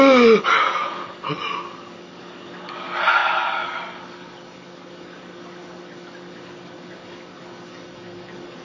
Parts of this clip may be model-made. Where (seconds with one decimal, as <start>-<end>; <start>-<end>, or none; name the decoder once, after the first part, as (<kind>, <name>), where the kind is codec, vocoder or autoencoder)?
0.0-8.6 (codec, DAC)